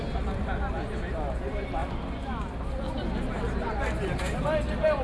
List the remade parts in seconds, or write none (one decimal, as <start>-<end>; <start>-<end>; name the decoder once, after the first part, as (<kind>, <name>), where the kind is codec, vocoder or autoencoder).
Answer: none